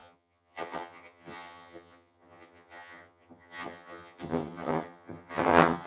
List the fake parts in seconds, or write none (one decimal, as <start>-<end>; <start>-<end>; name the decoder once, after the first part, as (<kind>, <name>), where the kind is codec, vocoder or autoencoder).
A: 0.0-5.9 (vocoder, HiFi-GAN)